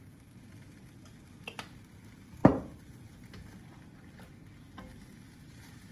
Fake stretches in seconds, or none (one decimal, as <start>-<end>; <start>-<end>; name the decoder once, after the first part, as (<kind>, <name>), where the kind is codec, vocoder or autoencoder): 2.4-4.3 (vocoder, BigVGAN v2)